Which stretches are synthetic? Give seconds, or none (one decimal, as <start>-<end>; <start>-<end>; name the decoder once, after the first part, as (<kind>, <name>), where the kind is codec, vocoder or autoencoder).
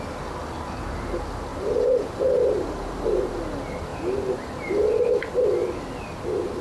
1.5-3.3 (vocoder, BigVGAN v2)